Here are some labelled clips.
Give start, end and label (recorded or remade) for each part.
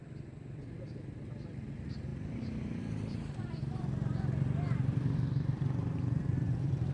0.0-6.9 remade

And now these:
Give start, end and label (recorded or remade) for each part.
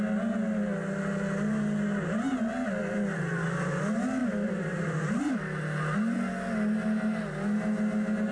0.0-2.8 recorded; 2.8-3.8 remade; 3.8-4.2 recorded; 4.2-5.3 remade; 5.3-8.3 recorded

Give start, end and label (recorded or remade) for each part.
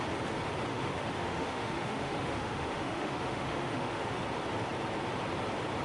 0.0-0.7 recorded; 0.7-4.2 remade; 4.2-5.8 recorded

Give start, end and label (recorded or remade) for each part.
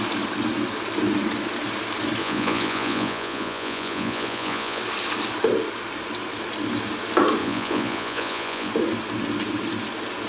0.0-2.2 recorded; 2.2-4.8 remade; 4.8-7.4 recorded; 7.4-8.7 remade; 8.7-10.3 recorded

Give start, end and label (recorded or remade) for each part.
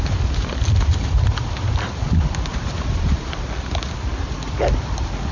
0.0-1.0 recorded; 1.0-1.6 remade; 1.6-2.5 recorded; 2.5-3.3 remade; 3.3-5.3 recorded